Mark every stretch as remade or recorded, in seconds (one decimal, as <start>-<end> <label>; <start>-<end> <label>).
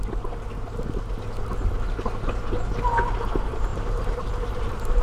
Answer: 0.0-3.7 recorded; 3.7-5.0 remade